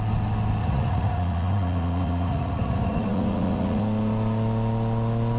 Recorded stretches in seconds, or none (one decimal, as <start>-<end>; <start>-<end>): 0.0-0.6; 3.8-5.4

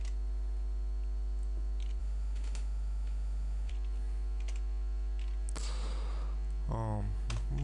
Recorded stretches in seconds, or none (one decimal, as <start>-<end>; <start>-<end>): 0.0-2.0; 3.7-7.6

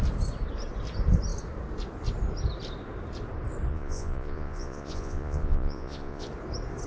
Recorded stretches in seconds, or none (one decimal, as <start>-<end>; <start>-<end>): 0.0-3.7; 6.3-6.9

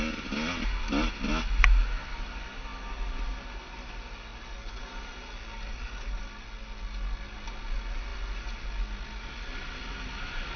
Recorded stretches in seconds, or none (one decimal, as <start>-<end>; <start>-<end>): 0.0-10.6